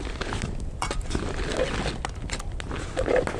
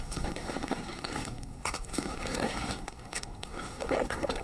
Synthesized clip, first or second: second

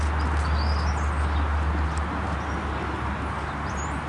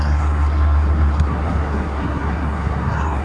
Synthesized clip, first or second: second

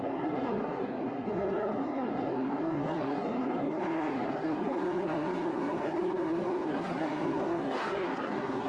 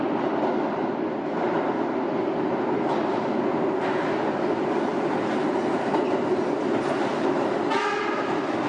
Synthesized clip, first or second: first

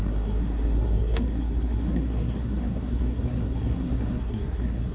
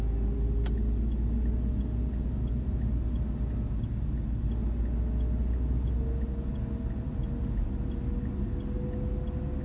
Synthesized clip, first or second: first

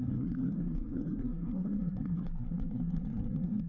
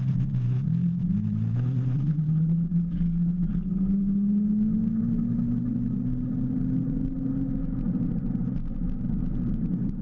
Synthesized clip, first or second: first